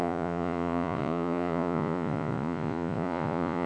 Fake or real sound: fake